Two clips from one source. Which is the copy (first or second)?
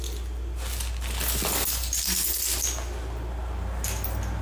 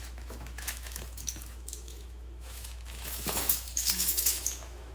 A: second